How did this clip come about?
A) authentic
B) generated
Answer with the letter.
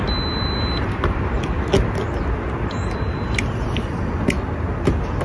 A